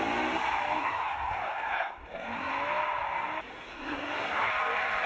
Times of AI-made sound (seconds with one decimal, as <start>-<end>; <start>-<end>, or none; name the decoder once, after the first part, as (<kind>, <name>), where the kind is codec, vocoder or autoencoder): 0.8-2.5 (codec, SNAC); 3.5-4.5

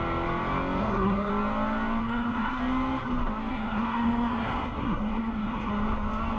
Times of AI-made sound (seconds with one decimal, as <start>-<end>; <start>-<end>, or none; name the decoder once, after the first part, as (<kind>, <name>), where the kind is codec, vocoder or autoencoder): 0.8-1.3 (codec, SNAC); 2.0-2.6; 3.5-5.7

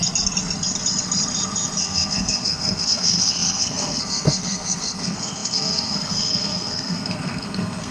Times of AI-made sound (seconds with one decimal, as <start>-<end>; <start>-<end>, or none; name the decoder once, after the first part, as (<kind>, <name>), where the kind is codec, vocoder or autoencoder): 1.8-7.9 (codec, SNAC)

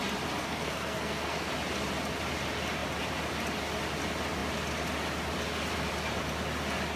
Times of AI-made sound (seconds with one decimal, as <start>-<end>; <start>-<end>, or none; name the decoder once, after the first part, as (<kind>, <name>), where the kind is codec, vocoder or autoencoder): 0.4-1.5 (codec, SNAC)

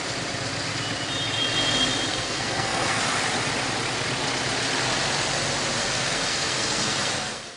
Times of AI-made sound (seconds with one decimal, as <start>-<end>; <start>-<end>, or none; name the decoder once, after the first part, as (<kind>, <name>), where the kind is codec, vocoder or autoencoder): 2.1-3.0 (codec, SNAC); 5.8-7.6

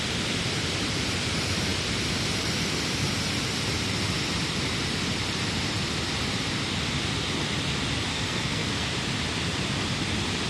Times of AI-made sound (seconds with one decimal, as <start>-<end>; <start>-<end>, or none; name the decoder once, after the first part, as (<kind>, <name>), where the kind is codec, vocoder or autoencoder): 8.1-8.9 (codec, SNAC)

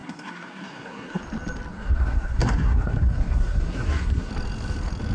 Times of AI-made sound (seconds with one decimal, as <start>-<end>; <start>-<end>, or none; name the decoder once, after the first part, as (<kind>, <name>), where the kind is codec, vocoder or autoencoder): 0.0-1.2 (codec, SNAC); 1.7-4.3

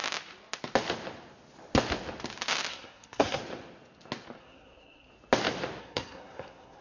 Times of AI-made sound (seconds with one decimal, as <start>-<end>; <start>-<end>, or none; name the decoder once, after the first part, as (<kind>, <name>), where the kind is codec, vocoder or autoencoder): 2.7-3.4 (codec, SNAC); 4.4-5.1; 5.8-6.8